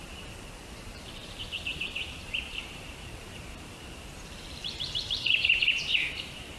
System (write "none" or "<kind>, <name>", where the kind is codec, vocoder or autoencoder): vocoder, BigVGAN v2